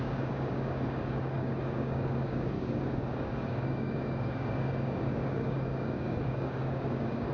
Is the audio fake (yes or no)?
yes